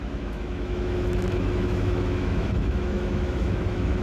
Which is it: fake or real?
fake